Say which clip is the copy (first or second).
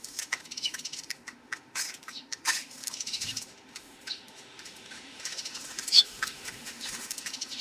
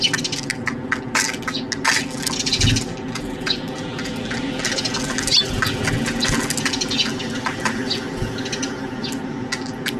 first